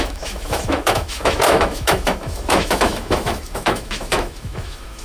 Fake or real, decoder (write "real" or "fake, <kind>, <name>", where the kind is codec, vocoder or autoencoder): fake, autoencoder, DAC-VAE